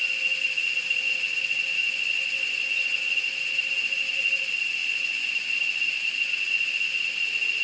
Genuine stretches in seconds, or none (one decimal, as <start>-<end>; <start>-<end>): 0.0-1.8; 3.0-4.8; 5.6-7.6